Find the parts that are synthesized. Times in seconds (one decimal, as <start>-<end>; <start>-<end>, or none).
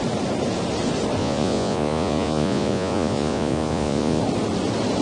1.2-4.2